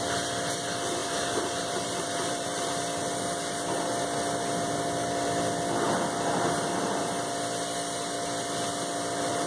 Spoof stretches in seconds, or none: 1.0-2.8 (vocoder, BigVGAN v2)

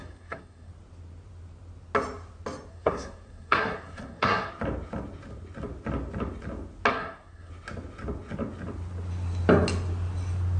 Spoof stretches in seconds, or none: 0.0-0.7 (codec, SNAC); 2.7-4.5; 6.9-7.5

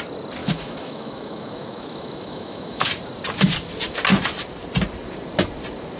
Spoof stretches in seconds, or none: 0.4-2.9 (autoencoder, DAC-VAE)

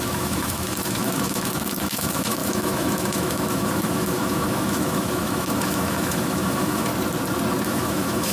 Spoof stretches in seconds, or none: 0.0-6.9 (autoencoder, DAC-VAE); 7.6-8.3